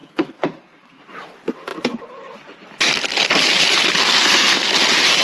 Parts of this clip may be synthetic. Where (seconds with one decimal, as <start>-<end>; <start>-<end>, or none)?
0.0-1.0; 4.0-4.7